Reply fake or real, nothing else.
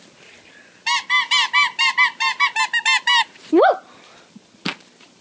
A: real